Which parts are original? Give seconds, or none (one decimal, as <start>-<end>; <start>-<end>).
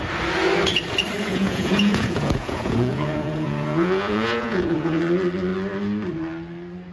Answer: 0.0-1.3; 5.0-6.9